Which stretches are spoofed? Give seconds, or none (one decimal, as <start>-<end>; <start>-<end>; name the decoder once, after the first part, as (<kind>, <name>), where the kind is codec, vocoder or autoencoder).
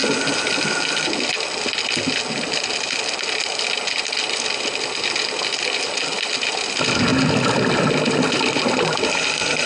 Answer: none